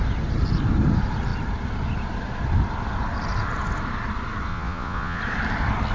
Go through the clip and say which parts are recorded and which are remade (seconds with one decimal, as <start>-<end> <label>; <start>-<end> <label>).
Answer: 0.0-4.5 recorded; 4.5-5.2 remade; 5.2-5.9 recorded